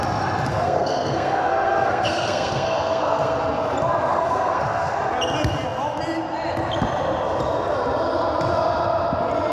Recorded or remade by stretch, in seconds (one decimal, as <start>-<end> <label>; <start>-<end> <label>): 0.0-0.5 recorded; 0.5-3.4 remade; 3.4-4.1 recorded; 4.1-5.0 remade; 5.0-9.5 recorded